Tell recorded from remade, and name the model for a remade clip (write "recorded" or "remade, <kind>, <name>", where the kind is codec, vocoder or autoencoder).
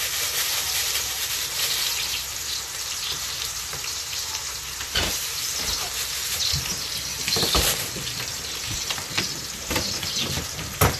remade, vocoder, BigVGAN v2